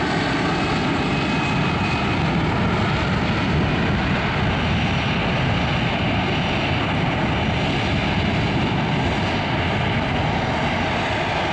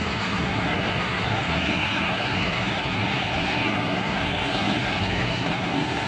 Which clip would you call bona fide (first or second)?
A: first